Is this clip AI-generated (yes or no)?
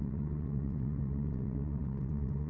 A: yes